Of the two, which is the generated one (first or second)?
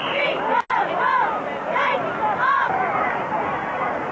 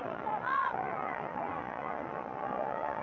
second